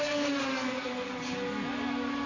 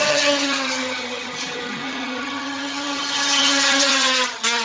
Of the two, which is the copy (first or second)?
second